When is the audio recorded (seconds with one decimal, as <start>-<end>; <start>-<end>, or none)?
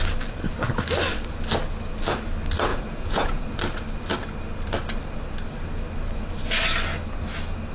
0.0-2.7; 3.4-7.7